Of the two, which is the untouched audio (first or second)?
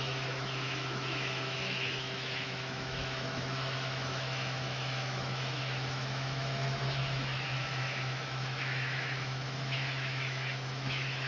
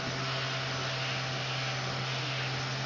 second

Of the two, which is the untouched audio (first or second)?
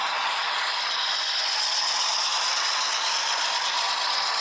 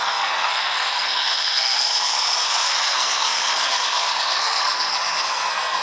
first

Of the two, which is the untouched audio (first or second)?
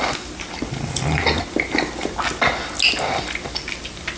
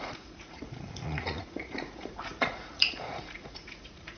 first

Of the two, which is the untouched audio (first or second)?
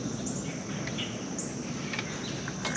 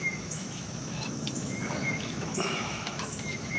first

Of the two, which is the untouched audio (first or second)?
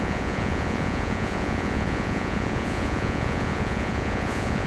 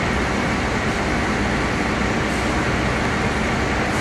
second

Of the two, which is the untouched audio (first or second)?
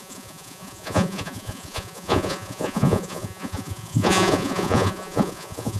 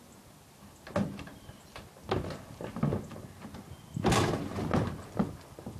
second